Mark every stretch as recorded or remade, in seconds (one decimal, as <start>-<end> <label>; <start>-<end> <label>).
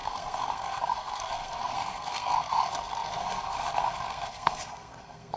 0.0-5.4 remade